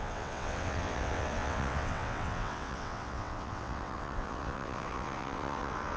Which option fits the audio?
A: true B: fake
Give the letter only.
B